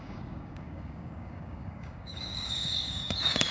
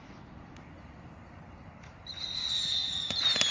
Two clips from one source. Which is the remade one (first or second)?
first